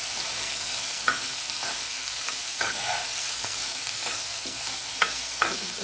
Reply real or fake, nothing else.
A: fake